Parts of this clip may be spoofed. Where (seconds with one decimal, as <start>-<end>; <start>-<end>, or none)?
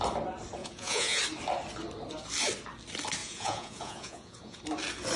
0.6-1.2; 3.2-4.6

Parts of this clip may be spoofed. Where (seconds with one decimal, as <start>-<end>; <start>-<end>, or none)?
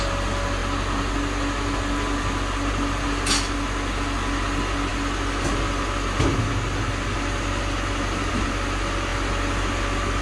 none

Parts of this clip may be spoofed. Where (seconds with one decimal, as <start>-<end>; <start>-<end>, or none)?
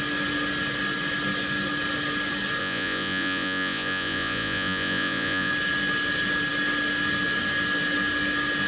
2.6-5.5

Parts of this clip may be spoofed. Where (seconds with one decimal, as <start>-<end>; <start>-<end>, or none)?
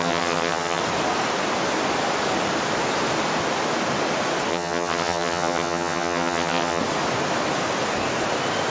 0.0-0.8; 4.5-6.8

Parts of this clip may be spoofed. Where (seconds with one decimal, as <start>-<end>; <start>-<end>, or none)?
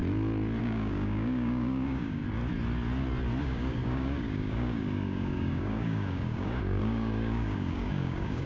0.6-2.2; 3.4-8.5